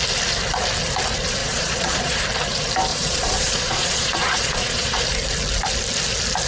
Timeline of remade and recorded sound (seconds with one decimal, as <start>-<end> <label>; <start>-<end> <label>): 0.0-1.4 recorded; 1.4-2.2 remade; 2.2-2.9 recorded; 2.9-5.0 remade; 5.0-6.5 recorded